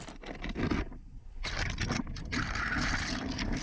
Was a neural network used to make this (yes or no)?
no